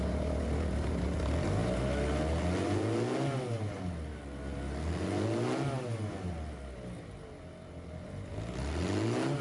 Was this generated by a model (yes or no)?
no